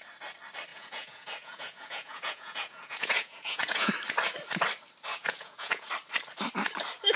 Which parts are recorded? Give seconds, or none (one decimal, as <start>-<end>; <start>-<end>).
0.0-0.7; 3.9-5.1; 5.9-7.2